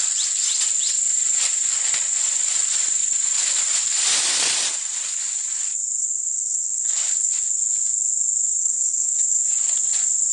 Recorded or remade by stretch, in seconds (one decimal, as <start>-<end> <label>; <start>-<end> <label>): 0.0-6.0 recorded; 6.0-7.3 remade; 7.3-8.6 recorded; 8.6-9.4 remade; 9.4-10.3 recorded